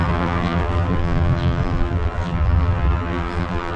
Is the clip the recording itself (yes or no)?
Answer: no